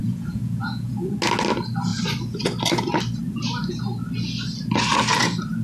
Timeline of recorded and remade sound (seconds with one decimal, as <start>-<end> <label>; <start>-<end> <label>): 0.0-1.1 remade; 1.1-5.6 recorded